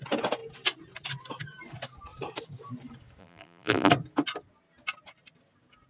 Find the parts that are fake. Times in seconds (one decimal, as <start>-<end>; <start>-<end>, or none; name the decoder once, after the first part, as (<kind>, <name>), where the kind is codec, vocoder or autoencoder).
3.2-3.9 (vocoder, BigVGAN v2)

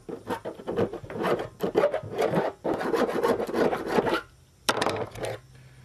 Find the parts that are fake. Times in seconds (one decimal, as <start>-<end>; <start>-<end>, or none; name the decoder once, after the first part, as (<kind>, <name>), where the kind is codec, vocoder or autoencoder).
none

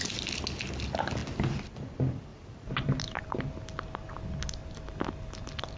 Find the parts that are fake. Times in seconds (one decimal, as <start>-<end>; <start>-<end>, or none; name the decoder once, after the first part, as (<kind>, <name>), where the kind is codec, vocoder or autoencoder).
2.3-3.4 (vocoder, BigVGAN v2)

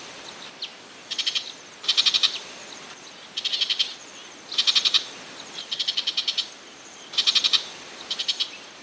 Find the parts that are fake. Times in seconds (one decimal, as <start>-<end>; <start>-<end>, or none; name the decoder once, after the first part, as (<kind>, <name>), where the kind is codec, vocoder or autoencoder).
0.0-0.7 (vocoder, BigVGAN v2); 2.1-2.6; 5.2-6.2; 7.4-8.8

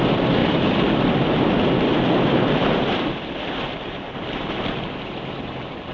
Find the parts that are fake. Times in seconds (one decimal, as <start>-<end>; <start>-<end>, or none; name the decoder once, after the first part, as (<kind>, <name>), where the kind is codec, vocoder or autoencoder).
0.0-5.9 (vocoder, BigVGAN v2)

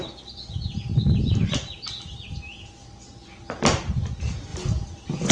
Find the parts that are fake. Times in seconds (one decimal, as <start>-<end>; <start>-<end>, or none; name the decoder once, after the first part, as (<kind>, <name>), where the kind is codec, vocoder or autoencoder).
none